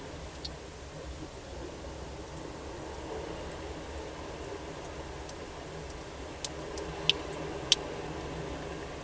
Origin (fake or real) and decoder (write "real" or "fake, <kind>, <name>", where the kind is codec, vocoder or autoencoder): real